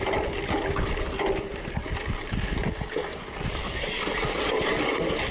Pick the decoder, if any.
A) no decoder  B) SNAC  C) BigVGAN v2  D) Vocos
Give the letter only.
A